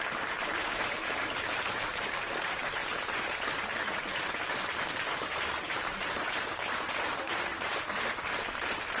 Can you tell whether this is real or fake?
fake